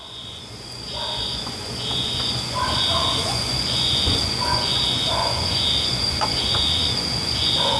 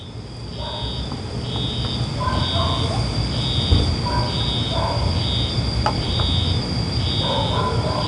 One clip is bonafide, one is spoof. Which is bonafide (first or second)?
second